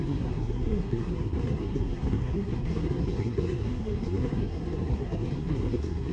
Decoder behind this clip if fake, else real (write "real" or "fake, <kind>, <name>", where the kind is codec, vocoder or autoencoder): fake, codec, SNAC